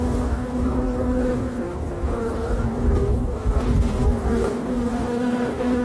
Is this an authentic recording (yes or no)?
no